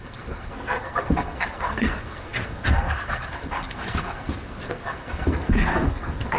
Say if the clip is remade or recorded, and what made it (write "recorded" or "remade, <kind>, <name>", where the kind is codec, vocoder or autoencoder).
remade, codec, SNAC